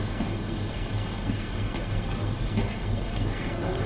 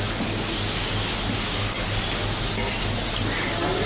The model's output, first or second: first